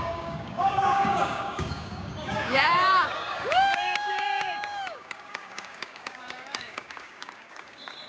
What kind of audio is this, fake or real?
fake